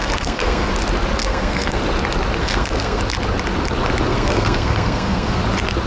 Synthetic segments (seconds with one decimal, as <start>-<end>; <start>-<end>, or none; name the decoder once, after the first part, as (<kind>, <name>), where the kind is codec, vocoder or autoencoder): 0.0-0.7 (codec, SNAC); 1.2-1.8; 2.4-3.0; 4.1-5.4